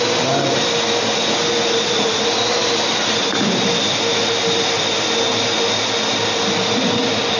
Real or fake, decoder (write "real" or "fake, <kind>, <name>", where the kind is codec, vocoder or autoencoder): real